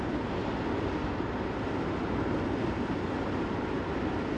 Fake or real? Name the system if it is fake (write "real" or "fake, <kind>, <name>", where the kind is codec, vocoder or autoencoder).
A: real